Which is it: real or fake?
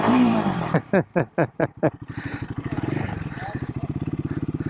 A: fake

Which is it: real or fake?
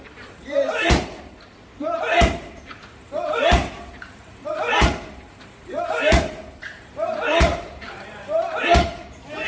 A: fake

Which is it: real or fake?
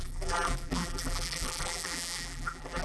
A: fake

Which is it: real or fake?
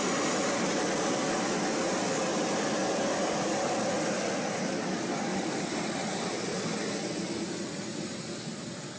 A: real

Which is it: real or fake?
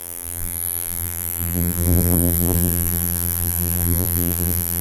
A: fake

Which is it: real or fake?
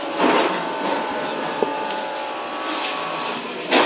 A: fake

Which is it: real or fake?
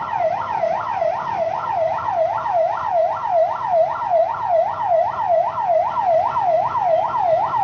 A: real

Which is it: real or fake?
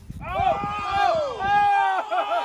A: real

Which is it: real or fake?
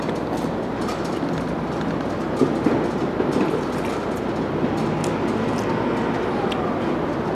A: real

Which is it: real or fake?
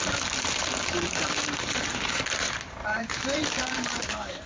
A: fake